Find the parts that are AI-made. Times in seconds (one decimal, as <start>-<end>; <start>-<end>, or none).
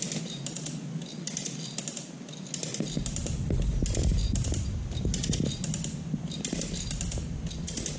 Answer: 1.1-2.1